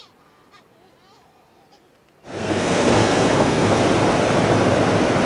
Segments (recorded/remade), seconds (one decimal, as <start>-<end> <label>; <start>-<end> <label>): 0.0-2.4 recorded; 2.4-3.8 remade; 3.8-5.3 recorded